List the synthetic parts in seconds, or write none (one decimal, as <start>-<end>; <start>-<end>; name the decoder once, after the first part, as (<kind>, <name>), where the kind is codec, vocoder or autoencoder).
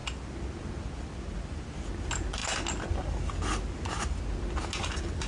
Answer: none